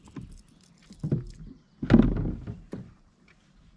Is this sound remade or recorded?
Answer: recorded